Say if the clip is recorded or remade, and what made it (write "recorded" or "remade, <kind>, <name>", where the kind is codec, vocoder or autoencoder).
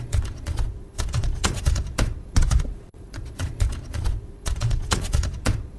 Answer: remade, vocoder, Vocos